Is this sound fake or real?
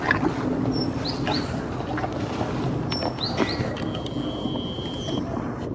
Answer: real